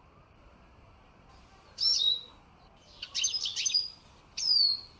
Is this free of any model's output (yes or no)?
yes